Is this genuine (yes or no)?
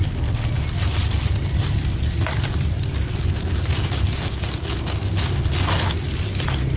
yes